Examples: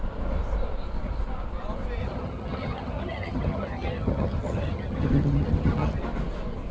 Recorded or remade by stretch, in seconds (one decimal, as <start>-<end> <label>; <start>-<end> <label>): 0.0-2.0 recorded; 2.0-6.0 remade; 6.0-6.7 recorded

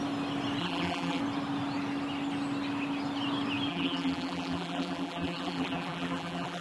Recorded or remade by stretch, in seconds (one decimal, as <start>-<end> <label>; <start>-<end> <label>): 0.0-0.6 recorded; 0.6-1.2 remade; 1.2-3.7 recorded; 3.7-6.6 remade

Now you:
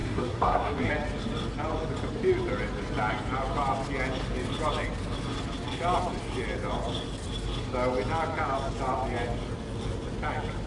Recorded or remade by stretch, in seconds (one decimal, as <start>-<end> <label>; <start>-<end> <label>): 0.0-0.9 remade; 0.9-10.7 recorded

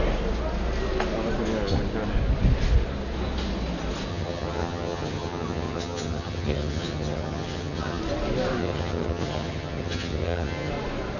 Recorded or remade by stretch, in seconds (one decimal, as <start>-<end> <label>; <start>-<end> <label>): 0.0-4.1 recorded; 4.1-8.0 remade; 8.0-8.6 recorded; 8.6-10.7 remade; 10.7-11.2 recorded

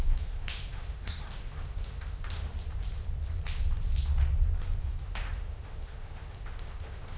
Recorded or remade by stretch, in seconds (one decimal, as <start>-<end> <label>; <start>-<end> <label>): 0.0-2.5 remade; 2.5-4.8 recorded; 4.8-7.2 remade

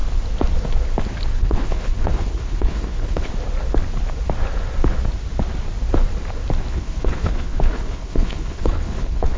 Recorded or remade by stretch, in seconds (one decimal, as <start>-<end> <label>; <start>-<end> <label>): 0.0-1.4 recorded; 1.4-3.3 remade; 3.3-6.7 recorded; 6.7-9.4 remade

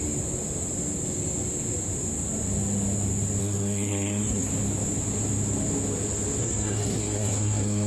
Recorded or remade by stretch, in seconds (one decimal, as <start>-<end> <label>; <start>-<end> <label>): 0.0-3.4 recorded; 3.4-4.5 remade; 4.5-6.4 recorded; 6.4-7.9 remade